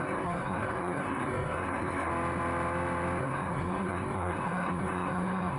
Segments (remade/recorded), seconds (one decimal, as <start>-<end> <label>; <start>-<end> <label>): 0.0-2.1 remade; 2.1-3.2 recorded; 3.2-5.6 remade

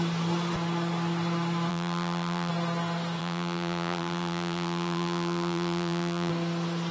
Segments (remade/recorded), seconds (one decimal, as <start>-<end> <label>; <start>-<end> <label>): 0.0-1.7 recorded; 1.7-2.5 remade; 2.5-3.2 recorded; 3.2-6.3 remade; 6.3-6.9 recorded

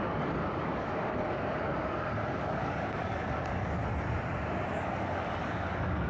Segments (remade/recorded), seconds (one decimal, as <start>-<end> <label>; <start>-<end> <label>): 0.0-3.8 remade; 3.8-4.7 recorded; 4.7-6.1 remade

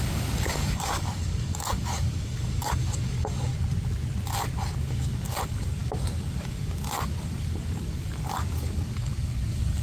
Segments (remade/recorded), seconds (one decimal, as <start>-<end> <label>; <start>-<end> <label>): 0.0-3.5 remade; 3.5-4.8 recorded; 4.8-9.8 remade

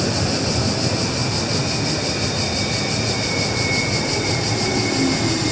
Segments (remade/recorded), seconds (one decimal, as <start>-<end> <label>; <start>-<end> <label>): 0.0-5.5 recorded

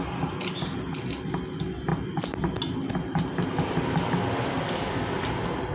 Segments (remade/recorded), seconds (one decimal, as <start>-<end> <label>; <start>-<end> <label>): 0.0-5.7 recorded

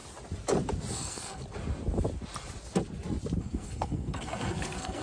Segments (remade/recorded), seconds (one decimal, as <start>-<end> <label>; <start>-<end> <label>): 0.0-0.9 recorded; 0.9-1.4 remade; 1.4-3.4 recorded; 3.4-5.0 remade